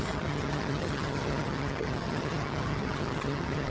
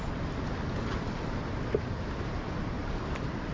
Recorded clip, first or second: second